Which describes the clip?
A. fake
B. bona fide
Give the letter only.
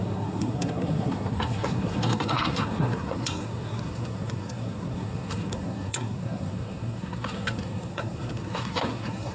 A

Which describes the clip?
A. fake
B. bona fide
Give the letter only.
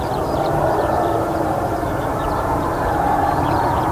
A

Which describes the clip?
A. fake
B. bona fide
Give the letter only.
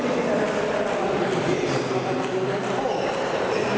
B